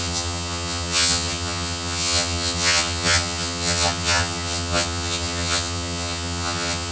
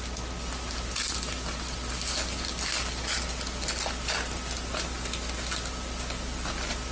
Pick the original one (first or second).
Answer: second